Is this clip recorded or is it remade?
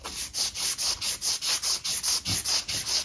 recorded